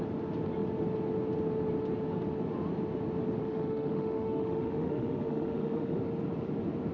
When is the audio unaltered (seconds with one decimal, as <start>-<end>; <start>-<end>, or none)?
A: 0.0-3.4; 6.0-6.9